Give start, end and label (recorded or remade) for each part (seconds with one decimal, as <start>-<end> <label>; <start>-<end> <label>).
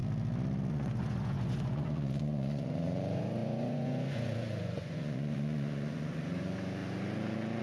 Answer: 0.0-0.7 recorded; 0.7-7.6 remade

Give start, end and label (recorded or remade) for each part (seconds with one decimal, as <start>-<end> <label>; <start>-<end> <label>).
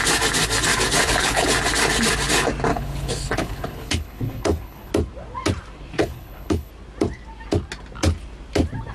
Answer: 0.0-1.0 recorded; 1.0-1.5 remade; 1.5-2.7 recorded; 2.7-4.9 remade; 4.9-6.0 recorded; 6.0-6.7 remade; 6.7-8.9 recorded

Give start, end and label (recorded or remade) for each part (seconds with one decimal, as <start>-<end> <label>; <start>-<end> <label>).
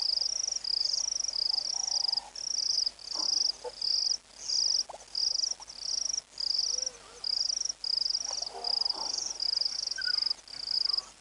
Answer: 0.0-11.2 recorded